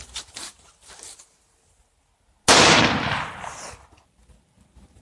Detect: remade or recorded recorded